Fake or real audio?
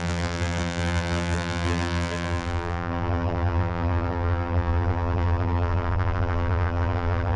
fake